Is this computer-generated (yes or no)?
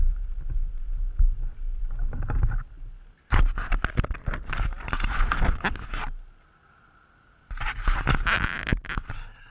no